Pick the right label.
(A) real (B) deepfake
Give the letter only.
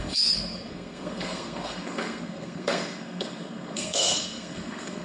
B